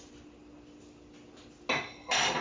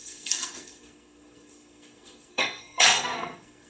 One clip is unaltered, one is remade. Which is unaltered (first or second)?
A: first